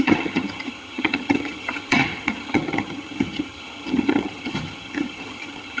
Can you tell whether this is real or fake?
fake